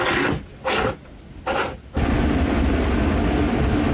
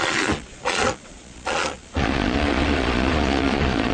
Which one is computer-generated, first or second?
second